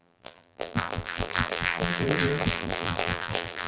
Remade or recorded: remade